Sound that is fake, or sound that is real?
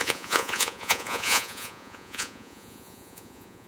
fake